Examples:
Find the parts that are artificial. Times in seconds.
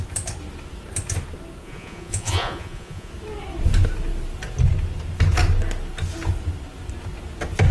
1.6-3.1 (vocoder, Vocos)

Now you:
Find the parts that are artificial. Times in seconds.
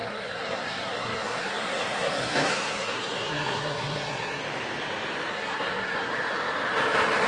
0.0-4.4 (codec, SNAC); 5.3-6.1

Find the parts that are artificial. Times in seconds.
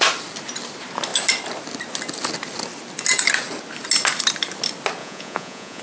5.0-5.8 (vocoder, Vocos)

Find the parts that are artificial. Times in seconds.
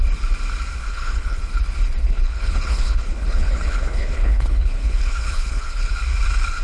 0.9-1.4 (codec, HILCodec); 2.0-5.9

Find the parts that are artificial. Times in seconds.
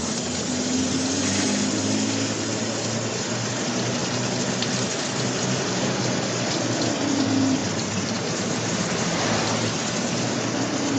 7.6-9.2 (vocoder, BigVGAN v2)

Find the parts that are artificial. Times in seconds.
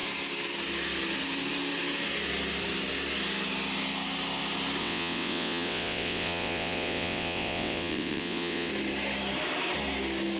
4.8-8.7 (vocoder, WaveNeXt)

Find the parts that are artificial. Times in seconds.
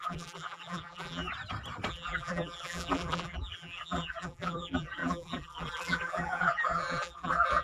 0.0-1.3 (vocoder, BigVGAN v2); 1.9-7.6